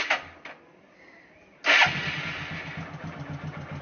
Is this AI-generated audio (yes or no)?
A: no